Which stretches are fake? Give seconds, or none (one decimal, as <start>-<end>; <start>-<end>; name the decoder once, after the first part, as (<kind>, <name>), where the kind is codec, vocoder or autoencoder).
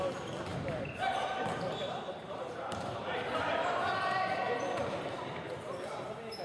0.5-3.4 (vocoder, BigVGAN v2)